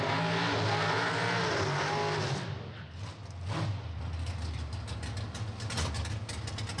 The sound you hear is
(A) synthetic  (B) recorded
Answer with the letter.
B